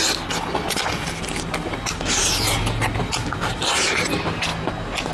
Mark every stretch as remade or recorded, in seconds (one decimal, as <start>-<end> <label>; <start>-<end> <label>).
0.0-5.1 recorded